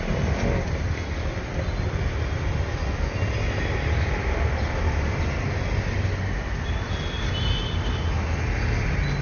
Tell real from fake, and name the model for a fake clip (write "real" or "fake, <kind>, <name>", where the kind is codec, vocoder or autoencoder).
real